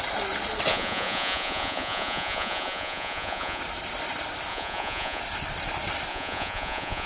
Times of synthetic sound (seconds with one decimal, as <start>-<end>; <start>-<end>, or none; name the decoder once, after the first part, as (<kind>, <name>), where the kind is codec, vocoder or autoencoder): 0.7-3.6 (vocoder, Vocos); 4.5-5.2; 6.1-7.1